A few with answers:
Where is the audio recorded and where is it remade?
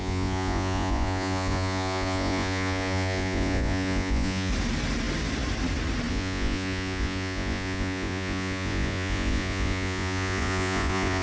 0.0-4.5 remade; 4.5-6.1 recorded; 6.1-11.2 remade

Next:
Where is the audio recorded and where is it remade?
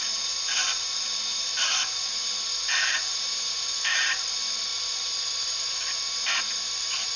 0.0-7.2 remade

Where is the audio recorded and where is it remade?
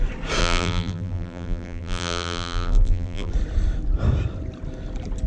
0.0-0.4 recorded; 0.4-3.3 remade; 3.3-5.3 recorded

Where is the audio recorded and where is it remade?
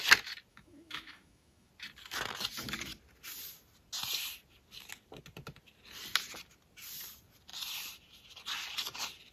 0.0-0.5 recorded; 0.5-1.7 remade; 1.7-9.3 recorded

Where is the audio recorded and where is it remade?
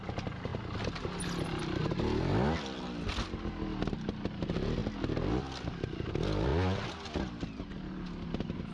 0.0-8.7 recorded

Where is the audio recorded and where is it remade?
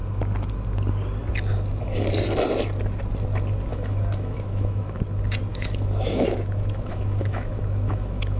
0.0-3.7 recorded; 3.7-5.0 remade; 5.0-5.5 recorded; 5.5-8.4 remade